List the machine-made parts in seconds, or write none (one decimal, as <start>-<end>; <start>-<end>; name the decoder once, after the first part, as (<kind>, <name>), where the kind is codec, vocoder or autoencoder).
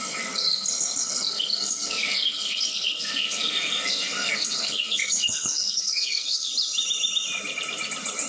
0.0-6.5 (codec, SNAC)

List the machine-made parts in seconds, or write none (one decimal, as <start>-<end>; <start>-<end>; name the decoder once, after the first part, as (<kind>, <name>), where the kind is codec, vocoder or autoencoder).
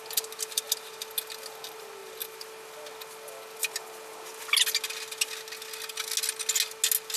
none